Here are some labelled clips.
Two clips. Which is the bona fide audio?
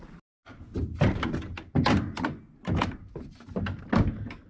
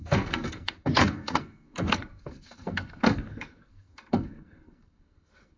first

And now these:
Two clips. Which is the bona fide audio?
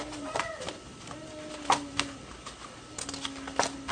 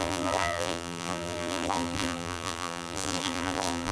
first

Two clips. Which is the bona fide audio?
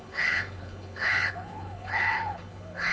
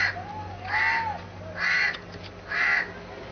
second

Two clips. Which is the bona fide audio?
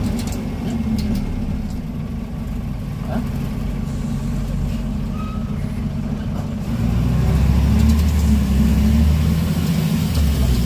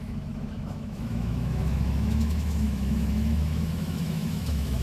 first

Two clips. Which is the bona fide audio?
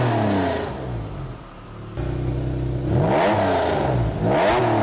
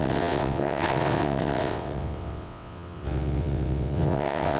first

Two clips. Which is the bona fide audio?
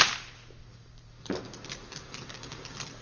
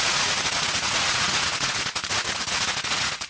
first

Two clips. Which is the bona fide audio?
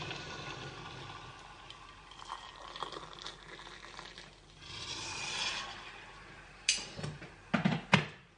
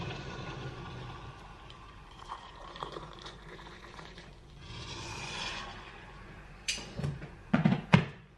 first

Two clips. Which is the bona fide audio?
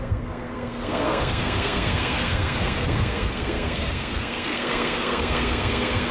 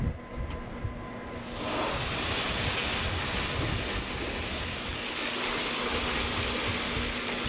second